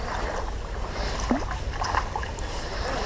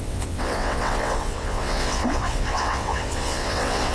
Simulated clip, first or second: second